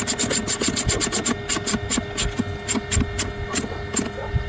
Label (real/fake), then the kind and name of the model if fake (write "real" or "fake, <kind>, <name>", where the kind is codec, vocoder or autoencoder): real